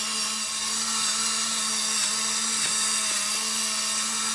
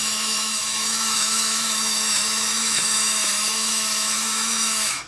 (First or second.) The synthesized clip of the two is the second